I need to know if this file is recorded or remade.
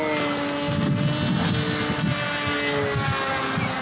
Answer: recorded